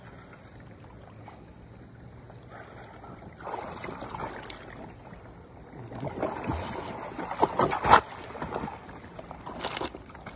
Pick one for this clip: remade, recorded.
recorded